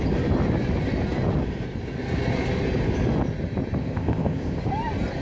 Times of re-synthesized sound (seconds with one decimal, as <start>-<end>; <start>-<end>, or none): 3.8-4.6